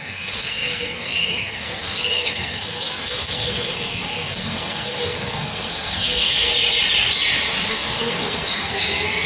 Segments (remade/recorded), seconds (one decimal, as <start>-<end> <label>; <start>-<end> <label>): 0.0-6.5 remade; 6.5-7.7 recorded; 7.7-9.3 remade